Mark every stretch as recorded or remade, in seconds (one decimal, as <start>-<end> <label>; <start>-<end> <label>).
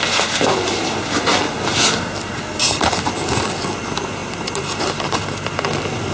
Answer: 0.0-4.2 recorded; 4.2-5.2 remade; 5.2-6.1 recorded